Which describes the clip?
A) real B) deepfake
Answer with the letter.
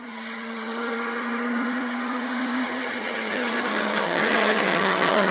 B